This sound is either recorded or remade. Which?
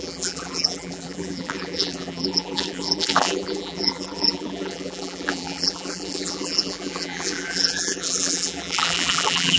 remade